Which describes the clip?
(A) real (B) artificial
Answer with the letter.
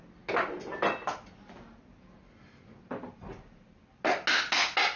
A